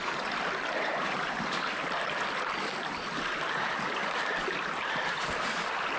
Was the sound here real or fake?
real